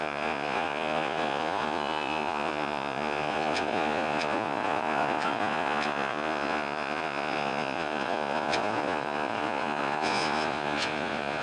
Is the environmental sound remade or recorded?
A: remade